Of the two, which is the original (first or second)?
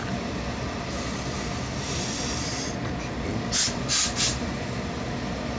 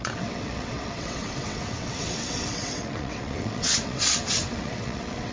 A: first